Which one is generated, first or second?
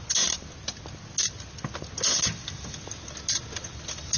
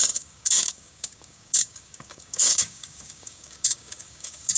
second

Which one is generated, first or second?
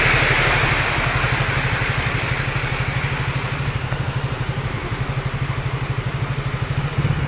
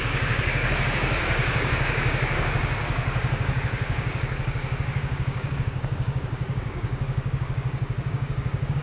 second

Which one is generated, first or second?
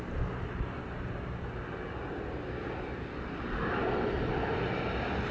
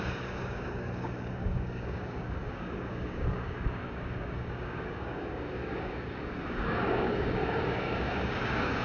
second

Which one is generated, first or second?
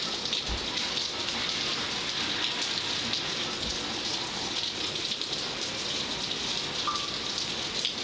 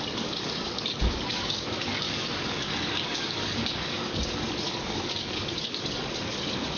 second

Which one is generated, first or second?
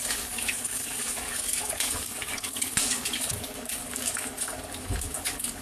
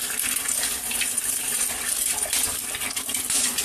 first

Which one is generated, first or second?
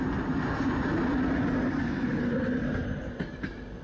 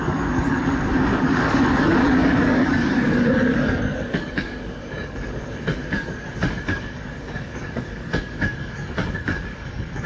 second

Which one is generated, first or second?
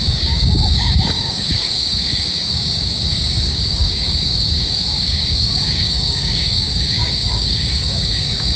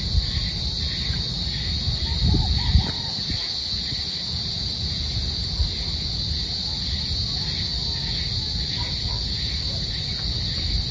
first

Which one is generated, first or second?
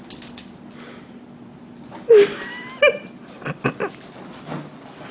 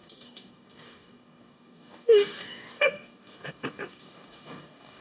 second